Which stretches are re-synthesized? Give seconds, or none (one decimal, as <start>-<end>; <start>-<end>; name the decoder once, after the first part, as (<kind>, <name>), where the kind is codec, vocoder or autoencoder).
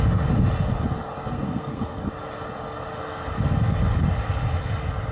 1.2-2.0 (codec, SNAC)